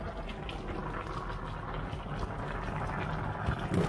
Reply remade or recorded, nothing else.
recorded